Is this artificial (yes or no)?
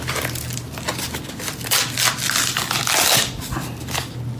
no